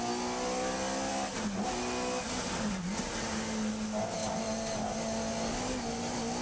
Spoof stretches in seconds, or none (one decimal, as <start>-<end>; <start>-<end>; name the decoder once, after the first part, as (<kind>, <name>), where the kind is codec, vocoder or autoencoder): none